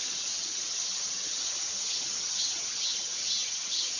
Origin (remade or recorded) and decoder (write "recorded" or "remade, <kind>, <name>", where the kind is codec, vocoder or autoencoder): remade, vocoder, HiFi-GAN